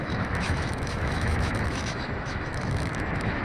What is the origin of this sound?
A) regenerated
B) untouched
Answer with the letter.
A